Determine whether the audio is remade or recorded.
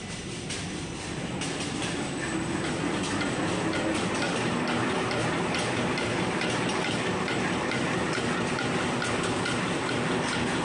recorded